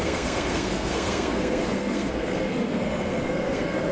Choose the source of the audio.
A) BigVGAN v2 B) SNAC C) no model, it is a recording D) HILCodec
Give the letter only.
B